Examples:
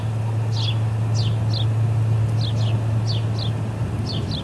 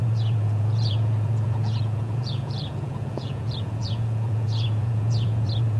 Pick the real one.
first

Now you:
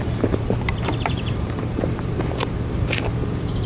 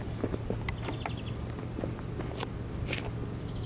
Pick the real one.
second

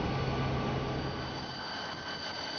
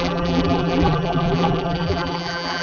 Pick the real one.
first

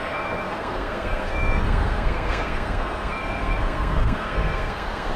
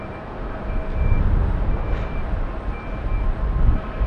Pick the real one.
second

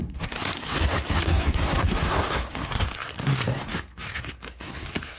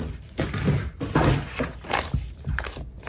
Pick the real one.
second